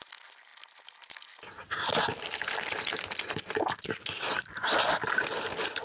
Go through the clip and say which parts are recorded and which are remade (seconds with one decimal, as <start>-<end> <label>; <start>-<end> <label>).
0.0-5.8 recorded